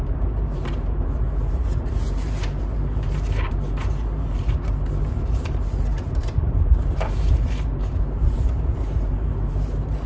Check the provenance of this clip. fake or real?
fake